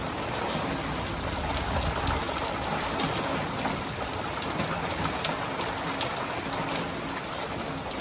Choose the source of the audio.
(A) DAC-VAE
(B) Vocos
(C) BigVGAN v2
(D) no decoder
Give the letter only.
D